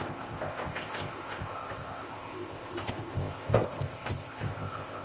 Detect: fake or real fake